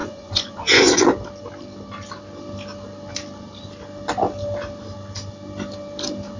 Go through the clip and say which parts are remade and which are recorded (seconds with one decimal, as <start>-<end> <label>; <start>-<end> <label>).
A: 0.0-1.0 remade; 1.0-6.4 recorded